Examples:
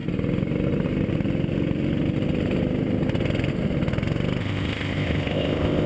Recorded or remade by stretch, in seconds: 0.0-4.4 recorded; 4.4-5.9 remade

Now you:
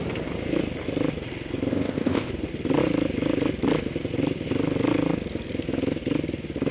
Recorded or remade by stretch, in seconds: 0.0-1.7 recorded; 1.7-2.3 remade; 2.3-6.7 recorded

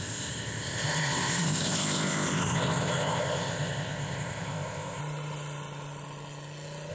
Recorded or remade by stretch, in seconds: 0.0-5.0 remade; 5.0-6.9 recorded

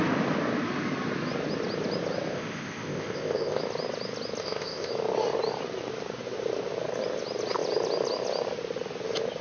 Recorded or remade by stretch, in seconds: 0.0-2.3 recorded; 2.3-3.6 remade; 3.6-4.4 recorded; 4.4-4.9 remade; 4.9-9.4 recorded

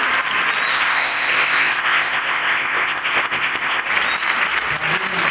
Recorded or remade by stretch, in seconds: 0.0-0.7 recorded; 0.7-3.9 remade; 3.9-5.3 recorded